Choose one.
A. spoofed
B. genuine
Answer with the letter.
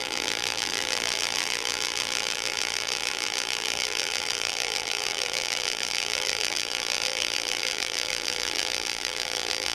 A